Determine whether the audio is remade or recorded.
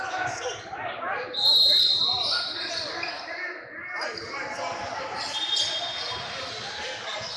recorded